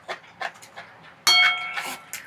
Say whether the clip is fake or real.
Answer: real